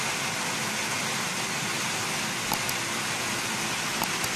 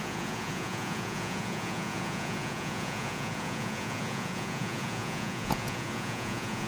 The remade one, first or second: second